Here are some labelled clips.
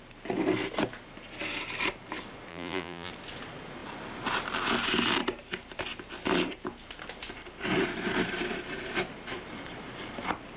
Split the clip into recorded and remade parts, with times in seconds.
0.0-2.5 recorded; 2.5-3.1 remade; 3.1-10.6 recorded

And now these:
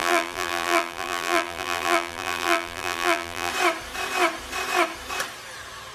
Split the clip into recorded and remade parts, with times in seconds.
0.0-3.5 remade; 3.5-5.9 recorded

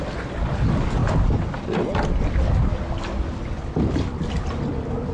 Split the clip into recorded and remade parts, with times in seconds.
0.0-5.1 recorded

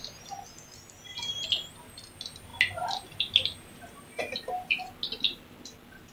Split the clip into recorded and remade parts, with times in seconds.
0.0-6.1 recorded

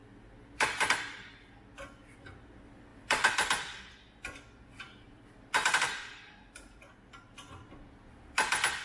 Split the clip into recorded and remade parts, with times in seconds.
0.0-2.9 recorded; 2.9-8.1 remade; 8.1-8.8 recorded

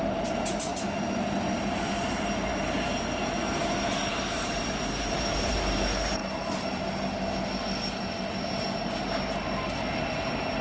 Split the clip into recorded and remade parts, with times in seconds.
0.0-0.7 remade; 0.7-1.6 recorded; 1.6-6.2 remade; 6.2-10.0 recorded; 10.0-10.6 remade